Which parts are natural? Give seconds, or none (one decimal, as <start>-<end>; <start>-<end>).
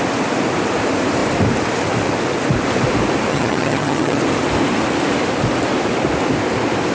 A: 0.0-3.3; 4.2-6.9